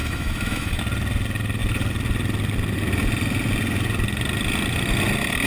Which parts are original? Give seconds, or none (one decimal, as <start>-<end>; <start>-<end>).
0.8-5.5